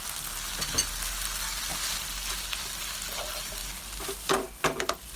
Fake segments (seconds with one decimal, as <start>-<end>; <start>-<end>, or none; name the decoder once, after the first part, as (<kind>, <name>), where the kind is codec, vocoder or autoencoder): none